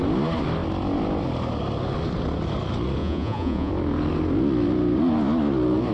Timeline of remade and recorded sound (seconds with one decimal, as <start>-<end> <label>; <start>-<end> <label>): 0.0-3.0 recorded; 3.0-3.7 remade; 3.7-5.9 recorded